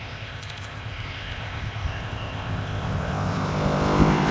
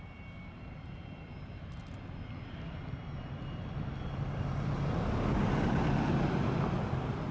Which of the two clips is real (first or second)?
second